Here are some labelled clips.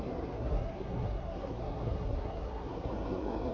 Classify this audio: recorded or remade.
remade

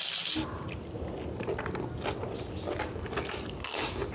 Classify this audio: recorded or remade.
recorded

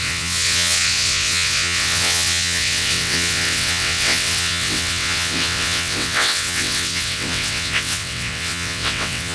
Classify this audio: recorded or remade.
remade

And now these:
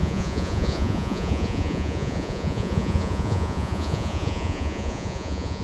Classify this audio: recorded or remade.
remade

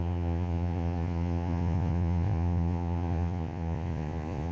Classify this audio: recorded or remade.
remade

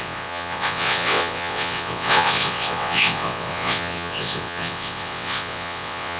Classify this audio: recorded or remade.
remade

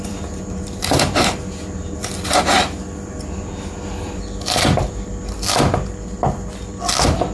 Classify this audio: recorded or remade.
recorded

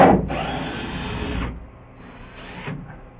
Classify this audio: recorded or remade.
recorded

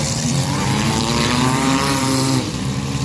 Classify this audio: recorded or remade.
remade